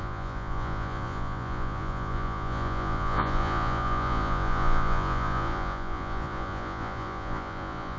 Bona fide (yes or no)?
no